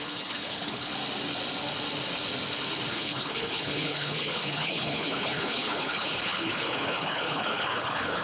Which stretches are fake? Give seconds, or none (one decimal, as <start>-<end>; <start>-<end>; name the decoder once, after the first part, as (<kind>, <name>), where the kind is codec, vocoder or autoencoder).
0.0-0.9 (codec, HILCodec); 2.9-8.2

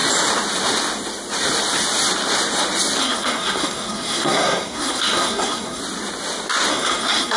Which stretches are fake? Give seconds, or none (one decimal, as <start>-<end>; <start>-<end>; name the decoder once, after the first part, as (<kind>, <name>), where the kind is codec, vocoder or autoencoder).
3.0-5.8 (codec, SNAC); 6.7-7.4

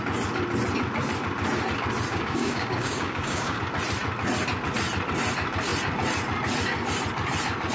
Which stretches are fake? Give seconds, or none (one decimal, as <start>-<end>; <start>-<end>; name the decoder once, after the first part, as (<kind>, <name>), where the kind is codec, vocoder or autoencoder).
2.1-3.6 (codec, DAC)

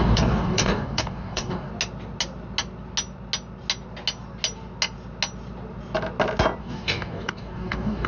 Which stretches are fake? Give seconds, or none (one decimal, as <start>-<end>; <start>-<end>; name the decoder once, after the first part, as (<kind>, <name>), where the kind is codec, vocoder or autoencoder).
0.0-1.7 (codec, DAC); 6.6-8.1

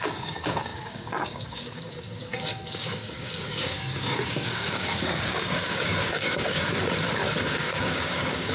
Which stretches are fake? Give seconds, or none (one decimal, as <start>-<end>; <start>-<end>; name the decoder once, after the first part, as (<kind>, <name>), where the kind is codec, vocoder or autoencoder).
0.0-6.7 (codec, DAC); 7.3-8.5

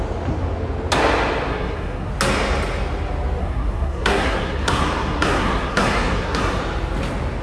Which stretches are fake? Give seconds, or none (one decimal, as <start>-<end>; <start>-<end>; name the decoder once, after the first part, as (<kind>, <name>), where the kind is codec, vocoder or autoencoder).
1.5-2.1 (codec, SNAC); 3.4-6.6

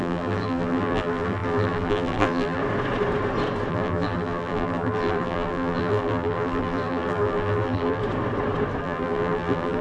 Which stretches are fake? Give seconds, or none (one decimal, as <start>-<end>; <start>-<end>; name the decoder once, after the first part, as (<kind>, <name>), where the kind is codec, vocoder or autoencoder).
0.0-2.6 (vocoder, BigVGAN v2); 3.7-8.0; 8.8-9.8

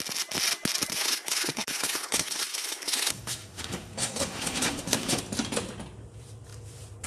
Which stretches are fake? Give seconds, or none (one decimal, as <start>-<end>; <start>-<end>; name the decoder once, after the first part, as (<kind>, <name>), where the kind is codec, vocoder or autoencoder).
0.9-5.2 (codec, SNAC)